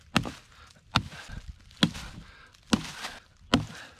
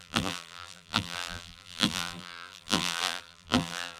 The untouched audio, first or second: first